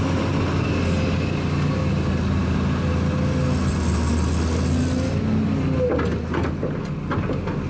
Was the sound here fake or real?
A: real